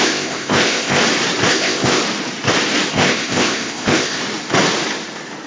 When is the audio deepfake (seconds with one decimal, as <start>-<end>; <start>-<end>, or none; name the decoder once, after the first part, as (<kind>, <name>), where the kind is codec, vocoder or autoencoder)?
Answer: 0.0-1.0 (codec, ZipCodec); 1.5-2.0; 2.9-4.2